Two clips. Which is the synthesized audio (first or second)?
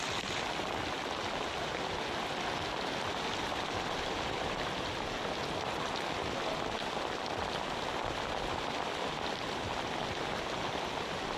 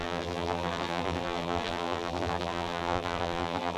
second